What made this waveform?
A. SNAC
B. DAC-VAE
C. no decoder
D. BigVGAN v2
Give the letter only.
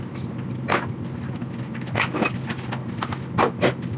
C